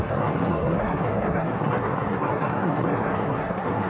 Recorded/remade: remade